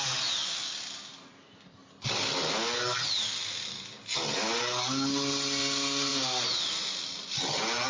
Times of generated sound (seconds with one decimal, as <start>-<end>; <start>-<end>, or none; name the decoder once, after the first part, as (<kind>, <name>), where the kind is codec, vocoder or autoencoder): none